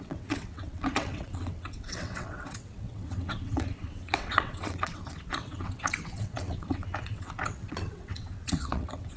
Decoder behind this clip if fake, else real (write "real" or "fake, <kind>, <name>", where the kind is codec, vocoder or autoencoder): fake, vocoder, WaveNeXt